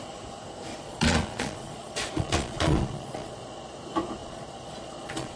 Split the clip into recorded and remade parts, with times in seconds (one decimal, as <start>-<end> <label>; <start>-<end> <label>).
0.0-0.7 recorded; 0.7-3.7 remade; 3.7-4.2 recorded; 4.2-5.4 remade

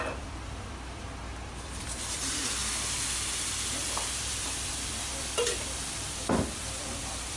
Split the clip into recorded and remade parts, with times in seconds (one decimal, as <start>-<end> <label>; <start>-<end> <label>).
0.0-2.6 remade; 2.6-3.4 recorded; 3.4-7.4 remade

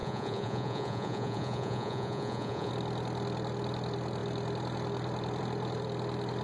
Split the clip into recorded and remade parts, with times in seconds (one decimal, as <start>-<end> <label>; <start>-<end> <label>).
0.0-2.7 remade; 2.7-6.4 recorded

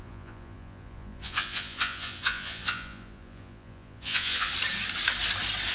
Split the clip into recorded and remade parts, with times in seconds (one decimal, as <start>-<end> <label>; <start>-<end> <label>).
0.0-4.5 remade; 4.5-5.7 recorded

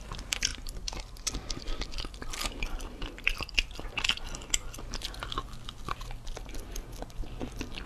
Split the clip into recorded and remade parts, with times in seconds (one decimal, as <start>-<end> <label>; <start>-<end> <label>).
0.0-7.9 recorded

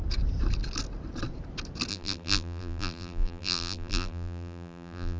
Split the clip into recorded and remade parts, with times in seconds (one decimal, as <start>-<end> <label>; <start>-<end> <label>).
0.0-1.9 recorded; 1.9-5.2 remade